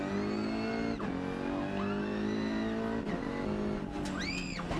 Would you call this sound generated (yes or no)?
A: no